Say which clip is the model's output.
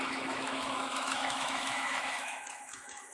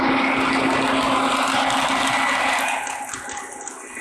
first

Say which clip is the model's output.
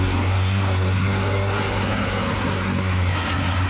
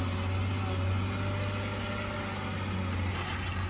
first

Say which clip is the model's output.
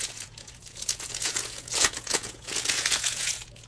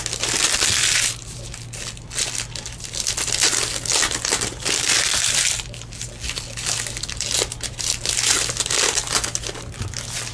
first